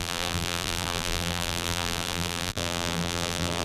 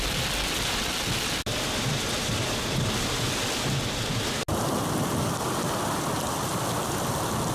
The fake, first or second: first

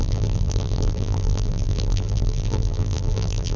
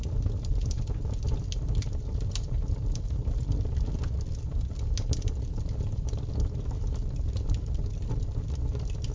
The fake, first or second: first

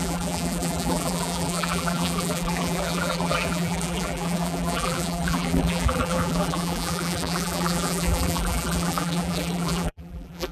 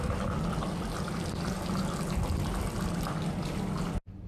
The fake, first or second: first